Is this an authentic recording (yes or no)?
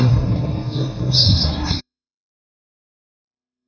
no